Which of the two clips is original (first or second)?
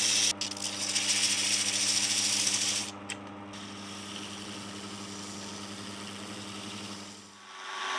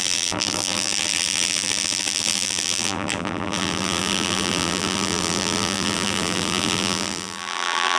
first